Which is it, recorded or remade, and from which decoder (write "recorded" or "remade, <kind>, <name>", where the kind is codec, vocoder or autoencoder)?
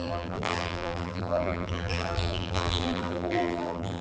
remade, vocoder, BigVGAN v2